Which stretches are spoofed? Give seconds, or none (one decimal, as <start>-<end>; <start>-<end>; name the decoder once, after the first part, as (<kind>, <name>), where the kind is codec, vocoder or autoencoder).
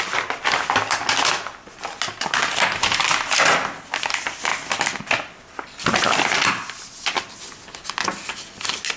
none